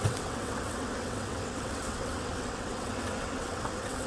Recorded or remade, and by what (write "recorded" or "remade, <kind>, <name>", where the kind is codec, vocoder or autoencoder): remade, vocoder, WaveNeXt